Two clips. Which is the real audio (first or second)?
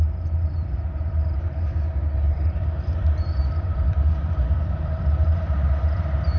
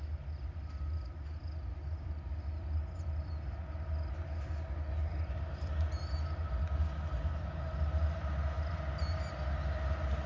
second